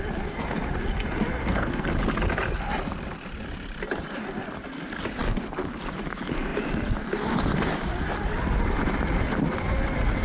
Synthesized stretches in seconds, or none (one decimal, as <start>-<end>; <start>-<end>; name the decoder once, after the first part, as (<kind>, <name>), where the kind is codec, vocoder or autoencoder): 1.4-1.9 (codec, SNAC)